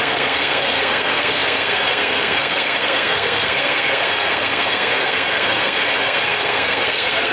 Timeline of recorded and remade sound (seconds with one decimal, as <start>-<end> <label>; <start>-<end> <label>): 0.0-7.3 remade

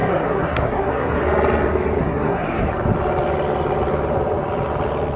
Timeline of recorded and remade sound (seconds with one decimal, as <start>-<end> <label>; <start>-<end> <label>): 0.0-1.2 remade; 1.2-2.0 recorded; 2.0-2.7 remade; 2.7-5.2 recorded

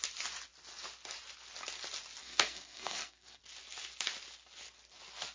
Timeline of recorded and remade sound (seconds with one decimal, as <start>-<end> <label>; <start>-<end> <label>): 0.0-2.2 recorded; 2.2-3.4 remade; 3.4-5.3 recorded